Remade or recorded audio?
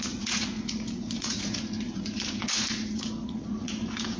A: remade